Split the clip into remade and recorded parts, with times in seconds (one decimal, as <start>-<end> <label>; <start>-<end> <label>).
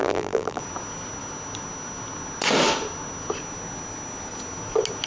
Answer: 0.0-0.6 remade; 0.6-5.1 recorded